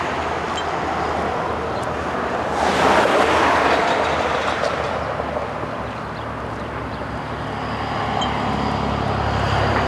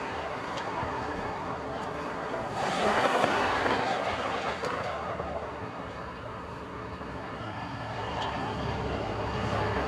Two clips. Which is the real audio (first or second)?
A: first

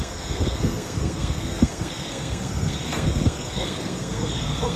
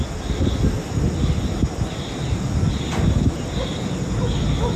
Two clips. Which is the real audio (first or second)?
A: second